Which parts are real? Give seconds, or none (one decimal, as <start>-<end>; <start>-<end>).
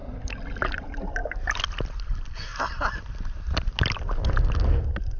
0.0-5.2